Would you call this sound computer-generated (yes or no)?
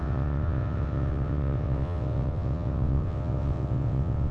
yes